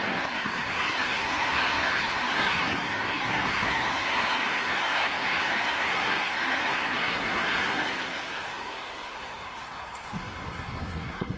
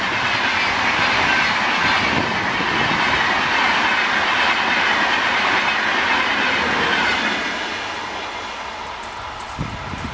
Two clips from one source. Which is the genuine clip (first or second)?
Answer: second